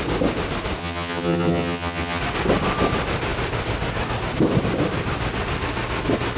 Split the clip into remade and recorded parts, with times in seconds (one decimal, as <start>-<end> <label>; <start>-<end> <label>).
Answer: 0.0-0.8 recorded; 0.8-2.2 remade; 2.2-6.4 recorded